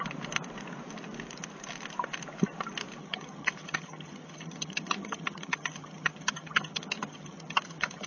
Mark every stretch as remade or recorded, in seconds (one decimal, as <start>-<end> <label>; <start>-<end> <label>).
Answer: 0.0-3.0 recorded; 3.0-8.1 remade